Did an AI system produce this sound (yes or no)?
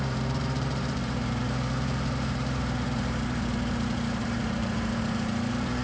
yes